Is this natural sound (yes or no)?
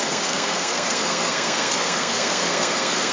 no